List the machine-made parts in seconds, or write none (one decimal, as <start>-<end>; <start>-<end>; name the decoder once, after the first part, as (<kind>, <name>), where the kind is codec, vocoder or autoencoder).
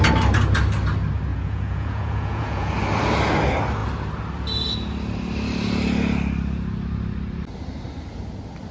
1.3-2.7 (vocoder, Vocos)